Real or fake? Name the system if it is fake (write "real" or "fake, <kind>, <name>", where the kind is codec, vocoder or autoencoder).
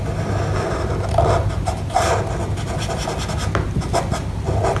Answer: real